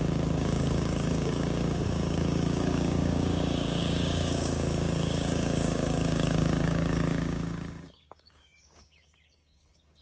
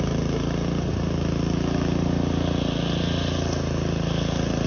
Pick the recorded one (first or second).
second